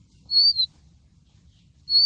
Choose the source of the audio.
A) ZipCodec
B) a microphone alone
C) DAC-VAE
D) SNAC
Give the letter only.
B